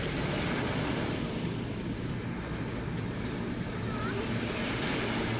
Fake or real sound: real